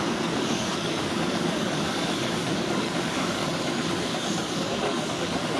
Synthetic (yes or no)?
yes